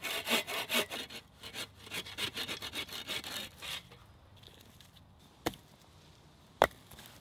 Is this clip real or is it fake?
real